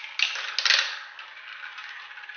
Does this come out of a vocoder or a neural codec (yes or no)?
no